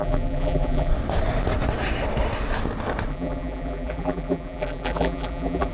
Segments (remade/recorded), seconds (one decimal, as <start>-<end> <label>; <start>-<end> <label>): 0.0-0.9 remade; 0.9-3.1 recorded; 3.1-5.7 remade